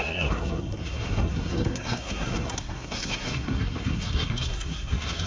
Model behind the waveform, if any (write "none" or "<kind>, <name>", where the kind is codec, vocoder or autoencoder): codec, SNAC